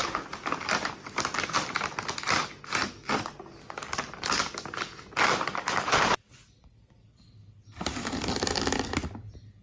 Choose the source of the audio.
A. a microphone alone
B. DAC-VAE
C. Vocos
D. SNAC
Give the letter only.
A